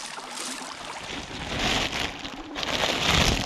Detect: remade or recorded remade